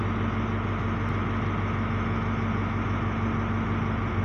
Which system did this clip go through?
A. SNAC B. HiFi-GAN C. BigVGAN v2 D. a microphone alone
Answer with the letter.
D